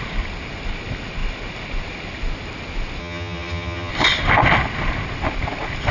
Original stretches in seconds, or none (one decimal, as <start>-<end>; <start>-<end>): 0.0-3.0; 3.9-5.9